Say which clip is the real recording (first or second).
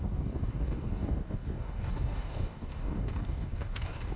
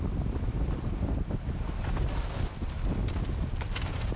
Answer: second